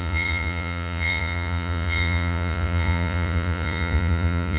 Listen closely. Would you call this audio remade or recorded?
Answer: remade